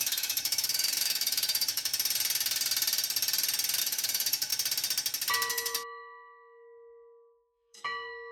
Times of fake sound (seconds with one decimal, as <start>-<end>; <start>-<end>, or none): 0.0-1.9; 3.8-4.5; 5.5-8.3